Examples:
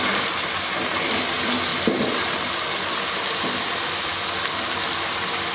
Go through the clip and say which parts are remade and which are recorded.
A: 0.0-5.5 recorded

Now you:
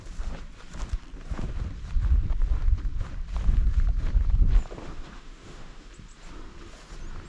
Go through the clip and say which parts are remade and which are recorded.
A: 0.0-4.8 recorded; 4.8-5.9 remade; 5.9-7.3 recorded

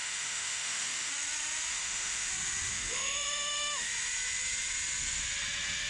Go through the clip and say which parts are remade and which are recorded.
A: 0.0-1.1 remade; 1.1-1.7 recorded; 1.7-2.3 remade; 2.3-2.7 recorded; 2.7-3.9 remade; 3.9-5.9 recorded

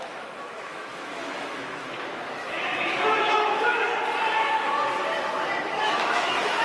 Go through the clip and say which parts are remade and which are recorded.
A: 0.0-3.9 remade; 3.9-5.6 recorded; 5.6-6.6 remade